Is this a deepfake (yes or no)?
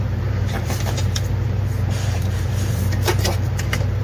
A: yes